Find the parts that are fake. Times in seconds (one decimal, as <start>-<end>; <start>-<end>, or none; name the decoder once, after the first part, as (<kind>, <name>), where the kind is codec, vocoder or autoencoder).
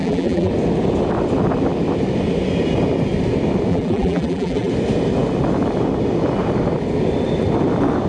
0.0-0.5 (vocoder, BigVGAN v2); 3.7-4.7